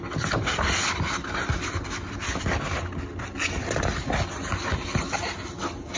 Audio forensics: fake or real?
real